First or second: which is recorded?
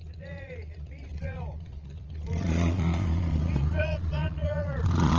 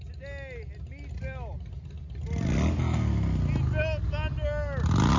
second